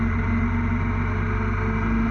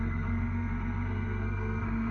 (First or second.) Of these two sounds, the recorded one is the first